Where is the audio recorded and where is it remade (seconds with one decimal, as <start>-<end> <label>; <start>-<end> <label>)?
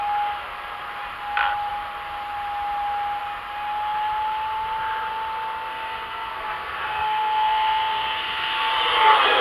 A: 0.0-5.7 recorded; 5.7-8.7 remade; 8.7-9.4 recorded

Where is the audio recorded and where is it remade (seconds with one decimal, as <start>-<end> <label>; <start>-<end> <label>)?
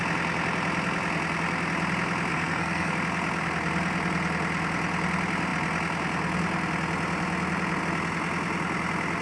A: 0.0-2.3 recorded; 2.3-2.9 remade; 2.9-9.2 recorded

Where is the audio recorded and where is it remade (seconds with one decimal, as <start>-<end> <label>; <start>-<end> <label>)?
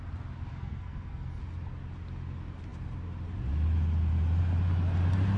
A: 0.0-0.5 recorded; 0.5-1.4 remade; 1.4-5.4 recorded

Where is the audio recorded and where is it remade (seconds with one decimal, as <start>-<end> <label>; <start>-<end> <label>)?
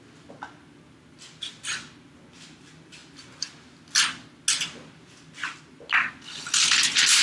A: 0.0-7.2 recorded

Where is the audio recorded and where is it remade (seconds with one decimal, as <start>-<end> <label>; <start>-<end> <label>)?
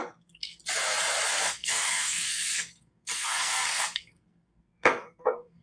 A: 0.0-0.6 remade; 0.6-1.3 recorded; 1.3-5.6 remade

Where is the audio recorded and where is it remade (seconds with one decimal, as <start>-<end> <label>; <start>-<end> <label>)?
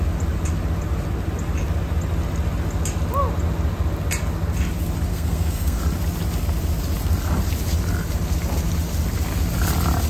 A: 0.0-5.1 recorded; 5.1-5.8 remade; 5.8-10.1 recorded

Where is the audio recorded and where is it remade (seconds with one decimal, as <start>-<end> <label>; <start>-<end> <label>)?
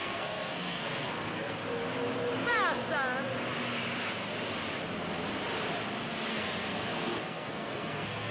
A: 0.0-1.6 remade; 1.6-6.3 recorded; 6.3-8.3 remade